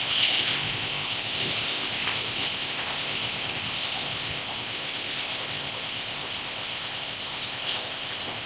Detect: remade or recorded remade